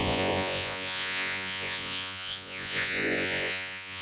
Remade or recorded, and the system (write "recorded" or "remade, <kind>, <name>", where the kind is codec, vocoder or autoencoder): remade, vocoder, Vocos